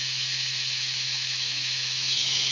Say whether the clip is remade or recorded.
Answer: remade